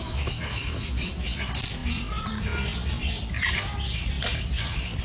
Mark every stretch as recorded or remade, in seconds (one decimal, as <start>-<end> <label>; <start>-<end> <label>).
0.0-1.1 remade; 1.1-5.0 recorded